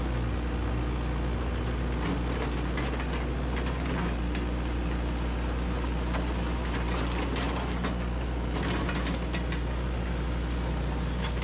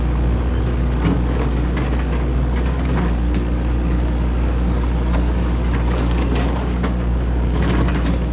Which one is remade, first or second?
second